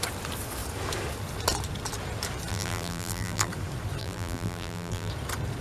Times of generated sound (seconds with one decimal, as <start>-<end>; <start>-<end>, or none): 2.5-3.5; 4.0-5.1